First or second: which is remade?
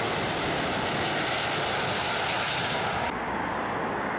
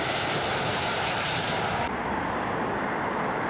second